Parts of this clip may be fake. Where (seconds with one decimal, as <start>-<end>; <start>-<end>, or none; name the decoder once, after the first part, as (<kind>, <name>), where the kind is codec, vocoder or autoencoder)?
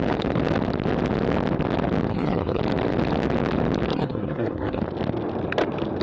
2.1-2.6 (codec, SNAC); 3.9-4.8